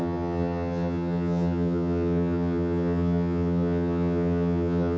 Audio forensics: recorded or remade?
remade